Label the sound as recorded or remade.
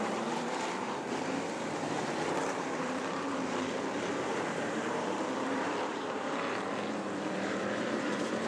remade